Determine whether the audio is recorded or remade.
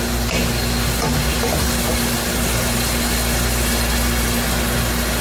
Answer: recorded